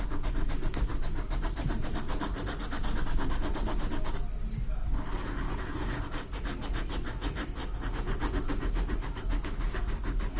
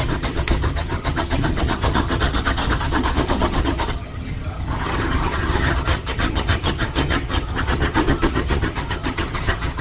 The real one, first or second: first